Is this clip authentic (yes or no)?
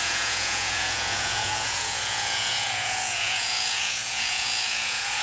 no